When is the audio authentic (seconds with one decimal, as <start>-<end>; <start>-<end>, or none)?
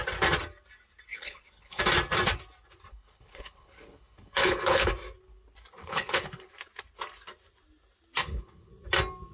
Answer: 0.0-1.1; 1.8-2.9; 4.9-5.8; 6.5-8.2; 8.7-9.3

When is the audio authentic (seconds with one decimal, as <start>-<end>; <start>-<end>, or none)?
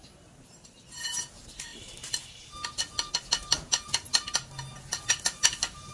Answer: 0.0-5.9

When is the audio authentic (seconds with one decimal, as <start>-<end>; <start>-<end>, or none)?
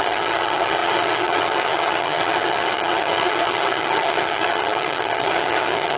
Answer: none